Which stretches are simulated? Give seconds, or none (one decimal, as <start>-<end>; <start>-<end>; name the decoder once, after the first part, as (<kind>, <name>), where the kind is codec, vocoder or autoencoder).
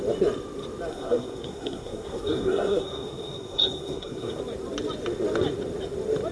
0.9-4.4 (codec, SNAC)